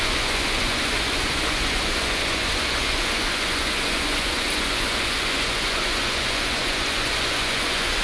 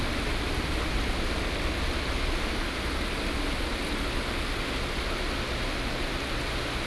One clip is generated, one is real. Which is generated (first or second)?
first